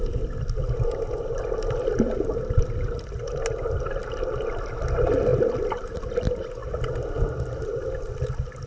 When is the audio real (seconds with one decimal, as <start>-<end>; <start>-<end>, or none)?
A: 0.0-8.7